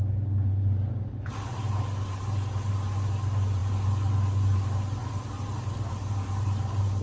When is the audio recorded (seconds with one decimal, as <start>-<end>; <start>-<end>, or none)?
0.0-7.0